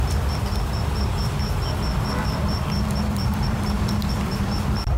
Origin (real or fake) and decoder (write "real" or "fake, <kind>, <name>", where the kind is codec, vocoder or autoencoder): fake, vocoder, BigVGAN v2